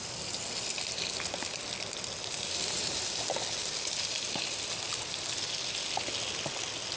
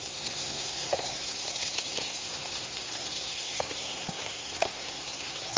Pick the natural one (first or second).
first